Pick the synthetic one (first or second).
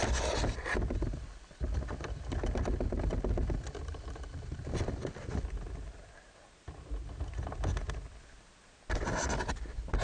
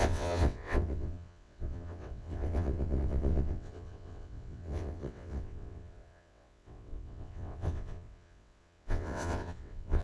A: second